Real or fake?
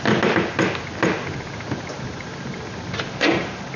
real